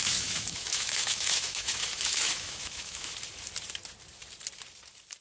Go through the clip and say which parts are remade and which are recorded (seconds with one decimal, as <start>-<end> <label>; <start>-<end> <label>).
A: 0.0-3.1 remade; 3.1-5.2 recorded